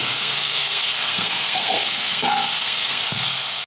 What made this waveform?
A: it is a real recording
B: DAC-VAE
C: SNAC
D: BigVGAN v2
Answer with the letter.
C